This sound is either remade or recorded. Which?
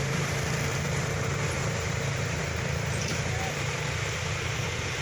remade